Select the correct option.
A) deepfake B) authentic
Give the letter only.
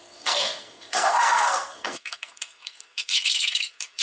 A